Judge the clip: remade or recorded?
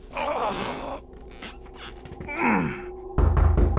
recorded